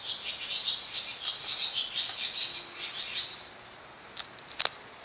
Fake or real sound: real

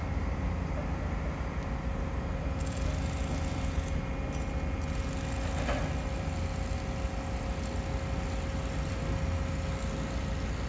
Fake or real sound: real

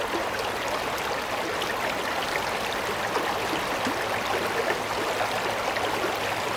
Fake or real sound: real